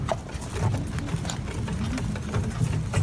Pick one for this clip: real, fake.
real